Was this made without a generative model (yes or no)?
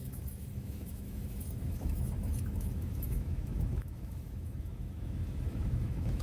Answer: no